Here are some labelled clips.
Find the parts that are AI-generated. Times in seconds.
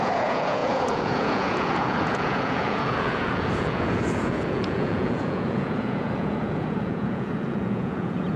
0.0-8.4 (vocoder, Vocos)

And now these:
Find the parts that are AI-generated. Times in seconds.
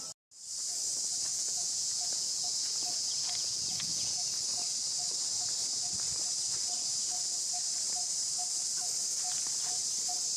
1.3-4.3 (vocoder, Vocos)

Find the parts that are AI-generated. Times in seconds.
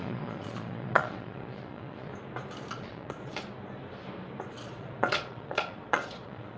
0.0-2.1 (vocoder, Vocos); 2.7-3.3; 4.5-6.6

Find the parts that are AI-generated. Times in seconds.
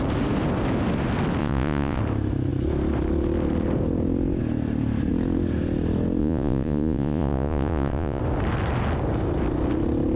1.4-2.0 (vocoder, Vocos); 6.2-8.2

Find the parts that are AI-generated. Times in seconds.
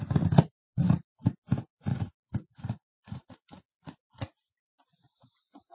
1.9-5.3 (vocoder, Vocos)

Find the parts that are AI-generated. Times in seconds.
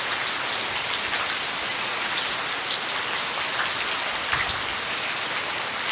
1.7-2.2 (vocoder, Vocos)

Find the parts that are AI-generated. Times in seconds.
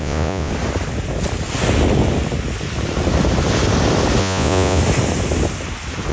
0.0-0.5 (vocoder, Vocos); 4.2-4.8